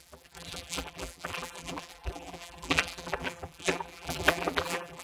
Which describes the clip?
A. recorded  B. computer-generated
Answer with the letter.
B